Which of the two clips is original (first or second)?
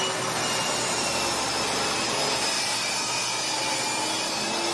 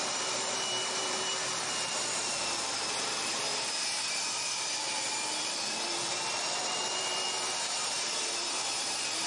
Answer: first